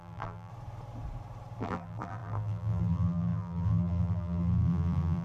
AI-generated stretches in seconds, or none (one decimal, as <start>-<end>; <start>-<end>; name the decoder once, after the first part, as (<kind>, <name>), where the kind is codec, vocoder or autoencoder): 0.0-0.5 (vocoder, BigVGAN v2); 1.6-5.2